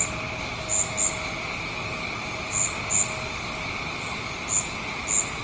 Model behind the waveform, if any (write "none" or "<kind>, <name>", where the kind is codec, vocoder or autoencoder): none